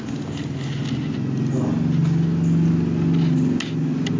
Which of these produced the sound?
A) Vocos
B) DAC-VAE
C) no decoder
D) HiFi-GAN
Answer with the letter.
C